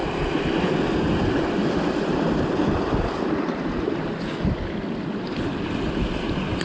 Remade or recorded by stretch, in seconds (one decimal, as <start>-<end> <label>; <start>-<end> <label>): 0.0-6.6 recorded